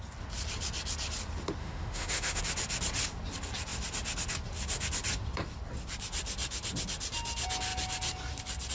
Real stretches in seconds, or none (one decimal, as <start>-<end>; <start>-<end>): 0.0-1.6; 2.4-8.7